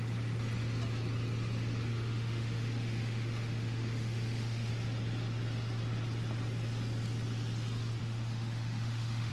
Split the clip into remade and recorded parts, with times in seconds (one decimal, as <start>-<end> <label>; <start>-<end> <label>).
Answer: 0.0-1.9 recorded; 1.9-4.7 remade; 4.7-8.0 recorded; 8.0-9.3 remade